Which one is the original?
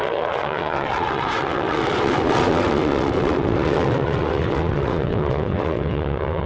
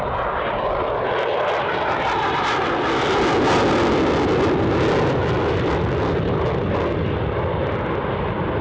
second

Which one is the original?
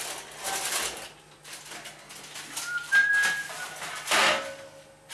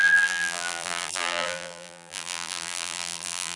first